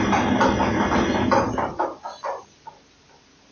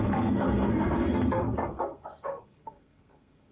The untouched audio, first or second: first